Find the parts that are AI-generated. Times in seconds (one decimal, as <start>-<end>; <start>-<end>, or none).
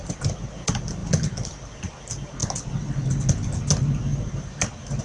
1.0-1.8; 4.1-5.0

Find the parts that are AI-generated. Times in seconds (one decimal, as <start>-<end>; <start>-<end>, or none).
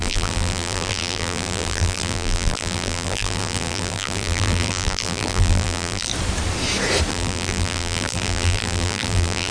0.0-6.1; 7.1-9.5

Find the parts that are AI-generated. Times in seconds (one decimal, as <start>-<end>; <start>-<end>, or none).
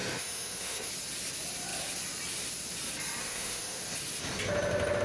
0.0-0.9; 3.2-3.8